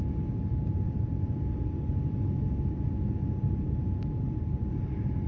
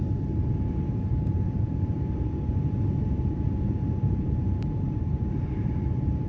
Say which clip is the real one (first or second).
first